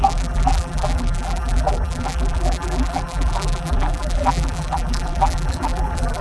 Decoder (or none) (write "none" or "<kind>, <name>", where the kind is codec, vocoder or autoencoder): vocoder, BigVGAN v2